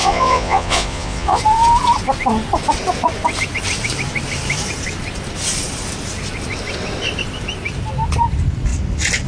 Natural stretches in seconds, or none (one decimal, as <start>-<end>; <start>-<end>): 1.4-9.3